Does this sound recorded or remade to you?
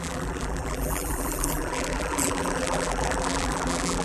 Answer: remade